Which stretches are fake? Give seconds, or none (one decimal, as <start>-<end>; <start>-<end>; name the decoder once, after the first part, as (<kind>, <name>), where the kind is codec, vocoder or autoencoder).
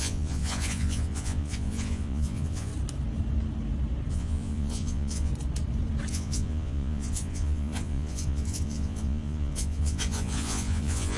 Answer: 0.0-2.7 (vocoder, Vocos); 4.1-5.3; 6.1-11.2